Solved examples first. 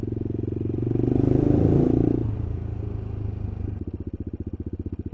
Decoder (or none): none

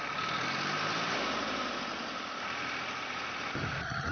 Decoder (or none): none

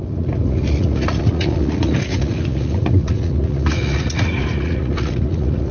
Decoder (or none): vocoder, Vocos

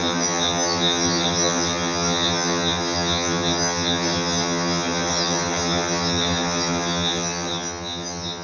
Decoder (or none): vocoder, HiFi-GAN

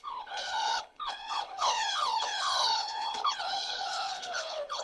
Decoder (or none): codec, HILCodec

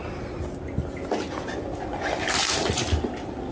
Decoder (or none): none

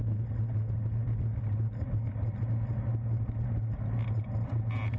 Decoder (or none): none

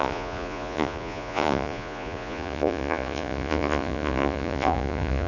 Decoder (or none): vocoder, Vocos